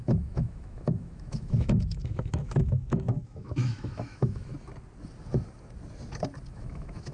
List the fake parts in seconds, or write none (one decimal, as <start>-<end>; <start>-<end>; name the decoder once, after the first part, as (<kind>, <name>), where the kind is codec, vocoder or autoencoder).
0.0-4.5 (autoencoder, DAC-VAE); 6.5-7.1